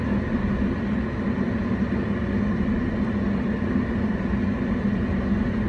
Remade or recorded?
recorded